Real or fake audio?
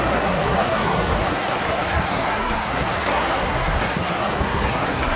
fake